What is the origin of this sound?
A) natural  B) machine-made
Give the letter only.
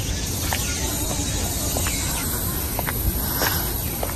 A